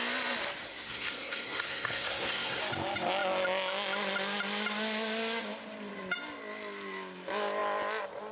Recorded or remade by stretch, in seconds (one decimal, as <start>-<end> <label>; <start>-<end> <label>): 0.0-0.6 recorded; 0.6-2.6 remade; 2.6-8.3 recorded